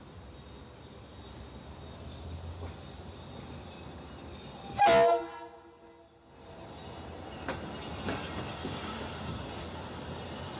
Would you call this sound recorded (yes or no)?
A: yes